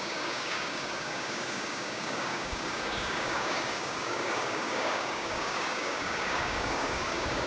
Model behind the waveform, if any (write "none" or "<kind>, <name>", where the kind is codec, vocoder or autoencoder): codec, DAC